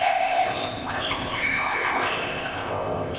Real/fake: fake